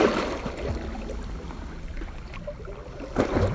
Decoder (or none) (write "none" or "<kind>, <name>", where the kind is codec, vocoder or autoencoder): none